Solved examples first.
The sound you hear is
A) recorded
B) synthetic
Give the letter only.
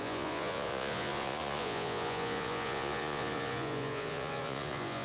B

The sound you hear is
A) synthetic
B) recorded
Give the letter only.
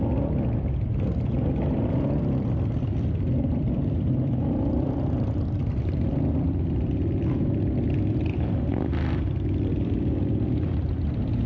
A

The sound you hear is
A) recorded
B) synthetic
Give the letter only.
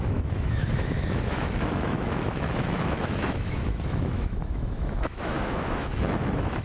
B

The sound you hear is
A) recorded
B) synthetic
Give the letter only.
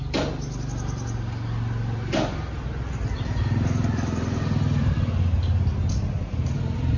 A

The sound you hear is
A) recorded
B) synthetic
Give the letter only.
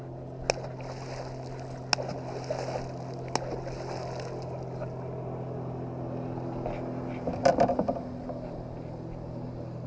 A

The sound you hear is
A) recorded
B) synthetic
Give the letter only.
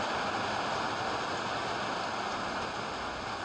A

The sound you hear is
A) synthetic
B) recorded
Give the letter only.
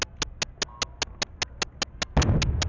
B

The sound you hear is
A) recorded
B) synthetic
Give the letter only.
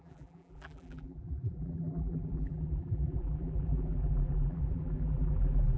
B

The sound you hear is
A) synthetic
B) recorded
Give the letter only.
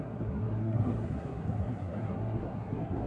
A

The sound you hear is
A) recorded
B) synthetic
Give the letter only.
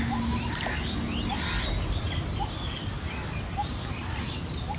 A